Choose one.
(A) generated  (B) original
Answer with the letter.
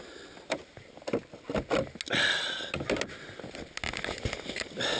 B